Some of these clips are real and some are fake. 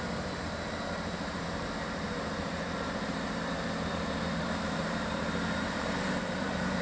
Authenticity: fake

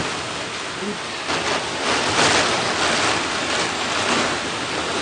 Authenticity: real